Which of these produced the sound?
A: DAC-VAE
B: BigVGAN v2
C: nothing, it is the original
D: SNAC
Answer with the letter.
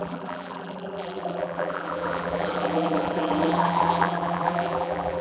B